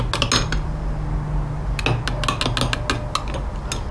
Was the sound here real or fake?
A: real